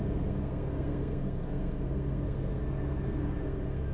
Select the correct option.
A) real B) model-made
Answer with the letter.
B